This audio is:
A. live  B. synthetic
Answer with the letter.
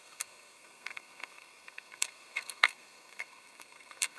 B